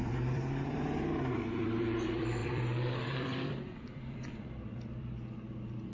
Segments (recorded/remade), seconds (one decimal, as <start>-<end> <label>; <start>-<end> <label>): 0.0-5.9 remade

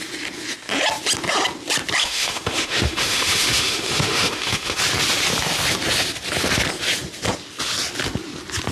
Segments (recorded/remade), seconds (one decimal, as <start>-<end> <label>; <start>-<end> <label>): 0.0-2.0 recorded; 2.0-4.8 remade; 4.8-8.7 recorded

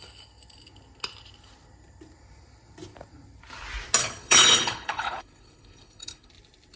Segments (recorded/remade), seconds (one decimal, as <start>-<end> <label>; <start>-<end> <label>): 0.0-4.0 recorded; 4.0-6.3 remade; 6.3-6.8 recorded

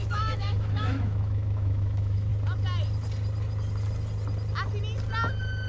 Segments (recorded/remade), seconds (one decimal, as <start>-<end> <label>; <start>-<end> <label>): 0.0-2.3 remade; 2.3-5.7 recorded